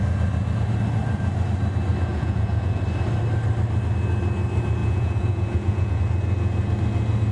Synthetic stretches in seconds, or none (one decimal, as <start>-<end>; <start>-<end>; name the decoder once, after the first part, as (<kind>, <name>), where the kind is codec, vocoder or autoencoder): 2.1-2.8 (vocoder, Vocos); 4.8-6.0